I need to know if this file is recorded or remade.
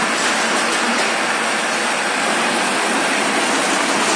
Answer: recorded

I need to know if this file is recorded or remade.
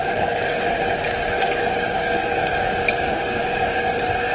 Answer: remade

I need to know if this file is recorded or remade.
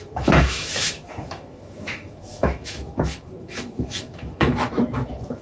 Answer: remade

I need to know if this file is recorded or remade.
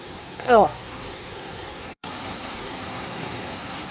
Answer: remade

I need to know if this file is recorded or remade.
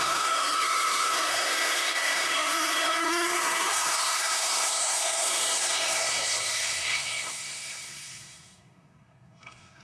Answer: remade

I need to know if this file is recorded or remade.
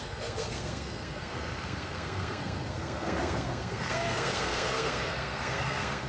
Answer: remade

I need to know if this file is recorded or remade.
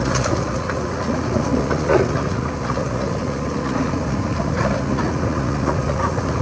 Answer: remade